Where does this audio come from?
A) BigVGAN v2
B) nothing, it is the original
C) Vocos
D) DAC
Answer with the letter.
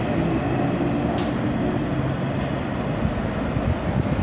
B